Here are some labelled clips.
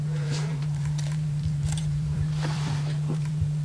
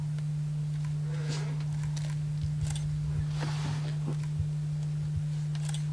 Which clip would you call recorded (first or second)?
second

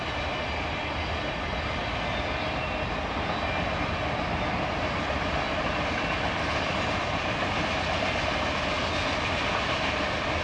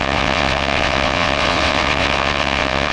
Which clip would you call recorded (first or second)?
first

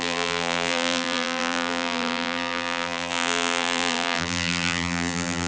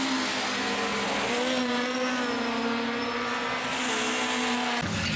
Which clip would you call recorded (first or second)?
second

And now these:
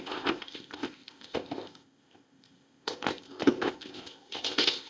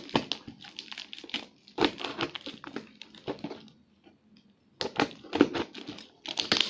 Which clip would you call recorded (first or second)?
second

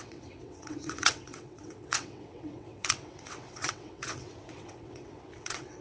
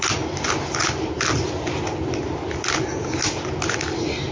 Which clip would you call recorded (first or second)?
second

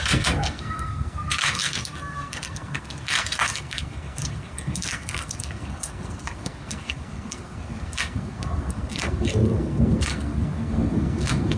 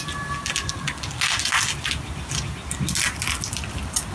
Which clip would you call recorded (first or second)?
second